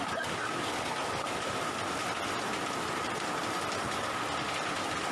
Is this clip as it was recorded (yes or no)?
yes